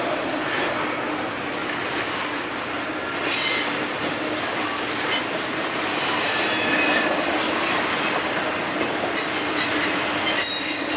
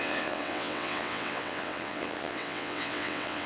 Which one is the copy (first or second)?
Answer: second